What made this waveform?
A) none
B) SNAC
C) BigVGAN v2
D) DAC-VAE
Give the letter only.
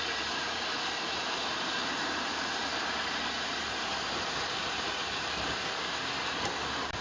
C